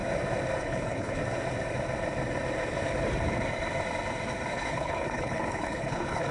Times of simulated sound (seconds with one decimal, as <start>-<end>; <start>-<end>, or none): 0.6-1.2; 4.5-6.3